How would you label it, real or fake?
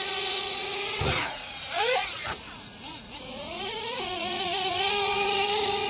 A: fake